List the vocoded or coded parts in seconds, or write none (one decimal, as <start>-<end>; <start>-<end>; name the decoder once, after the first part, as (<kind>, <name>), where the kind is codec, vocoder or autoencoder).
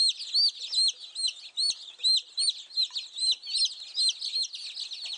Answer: none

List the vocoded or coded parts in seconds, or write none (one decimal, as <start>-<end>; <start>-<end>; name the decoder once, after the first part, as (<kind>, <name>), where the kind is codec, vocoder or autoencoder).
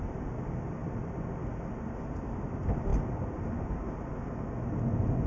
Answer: none